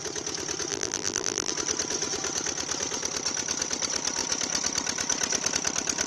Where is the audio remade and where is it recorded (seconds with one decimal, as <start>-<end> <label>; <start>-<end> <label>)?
0.0-0.7 recorded; 0.7-1.5 remade; 1.5-6.1 recorded